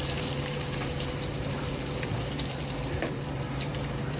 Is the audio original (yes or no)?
no